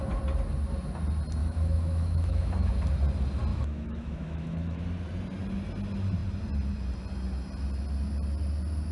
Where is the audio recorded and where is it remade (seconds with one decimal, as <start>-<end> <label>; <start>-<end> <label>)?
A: 0.0-1.4 recorded; 1.4-2.7 remade; 2.7-3.5 recorded; 3.5-4.8 remade; 4.8-8.9 recorded